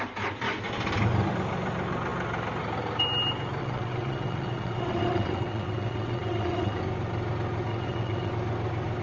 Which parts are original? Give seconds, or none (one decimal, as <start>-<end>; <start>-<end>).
0.0-3.6; 6.8-7.7; 8.3-9.0